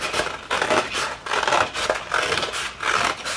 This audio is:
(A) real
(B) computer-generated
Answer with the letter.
A